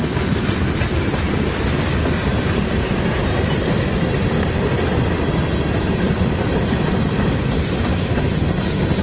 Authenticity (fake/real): real